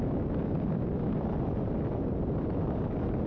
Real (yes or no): yes